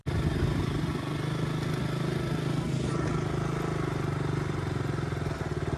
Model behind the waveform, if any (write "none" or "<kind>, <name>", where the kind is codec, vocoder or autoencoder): none